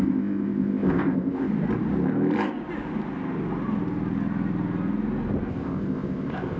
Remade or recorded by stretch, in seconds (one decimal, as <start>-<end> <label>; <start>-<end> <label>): 0.0-1.5 remade; 1.5-5.5 recorded; 5.5-6.6 remade